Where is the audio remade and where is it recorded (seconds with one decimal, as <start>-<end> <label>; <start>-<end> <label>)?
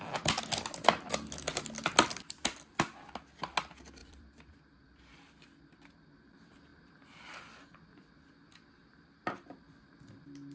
0.0-4.0 recorded; 4.0-5.0 remade; 5.0-6.7 recorded; 6.7-7.4 remade; 7.4-8.8 recorded; 8.8-9.4 remade; 9.4-10.5 recorded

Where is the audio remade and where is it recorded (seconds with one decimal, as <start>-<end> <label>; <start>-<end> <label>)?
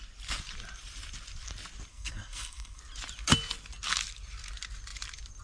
0.0-1.9 recorded; 1.9-2.8 remade; 2.8-5.4 recorded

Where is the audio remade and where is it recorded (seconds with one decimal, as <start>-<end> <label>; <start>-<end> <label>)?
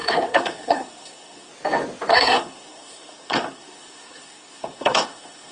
0.0-1.5 remade; 1.5-2.1 recorded; 2.1-5.5 remade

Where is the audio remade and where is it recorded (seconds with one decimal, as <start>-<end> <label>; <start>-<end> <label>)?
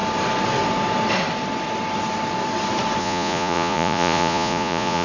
0.0-3.0 recorded; 3.0-5.0 remade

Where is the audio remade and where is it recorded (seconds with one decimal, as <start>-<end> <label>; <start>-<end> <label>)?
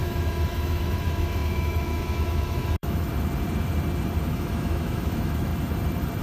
0.0-3.1 remade; 3.1-4.2 recorded; 4.2-5.5 remade; 5.5-6.2 recorded